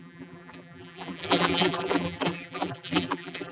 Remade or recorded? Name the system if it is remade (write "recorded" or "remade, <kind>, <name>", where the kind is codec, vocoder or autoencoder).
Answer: remade, vocoder, BigVGAN v2